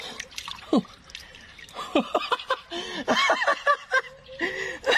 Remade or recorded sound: recorded